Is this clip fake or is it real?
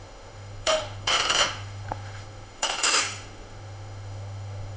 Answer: fake